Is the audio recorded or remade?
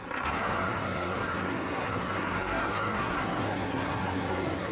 remade